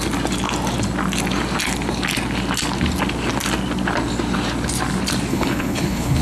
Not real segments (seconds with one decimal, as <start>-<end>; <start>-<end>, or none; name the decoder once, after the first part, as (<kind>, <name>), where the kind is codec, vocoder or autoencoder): 5.3-6.2 (codec, HILCodec)